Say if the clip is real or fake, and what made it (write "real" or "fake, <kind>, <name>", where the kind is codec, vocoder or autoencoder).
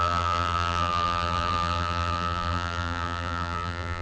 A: fake, vocoder, BigVGAN v2